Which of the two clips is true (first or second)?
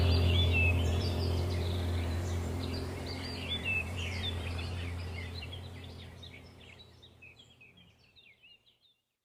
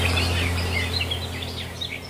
second